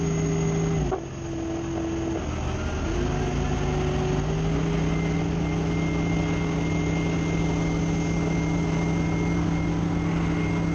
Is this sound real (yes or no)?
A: yes